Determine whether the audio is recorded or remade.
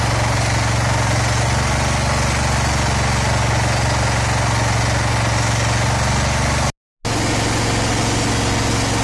recorded